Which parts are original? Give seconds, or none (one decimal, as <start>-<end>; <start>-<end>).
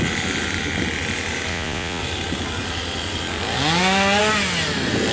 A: 0.0-1.5; 2.0-5.1